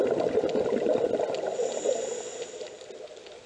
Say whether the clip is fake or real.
real